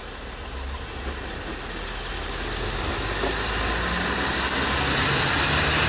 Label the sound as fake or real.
real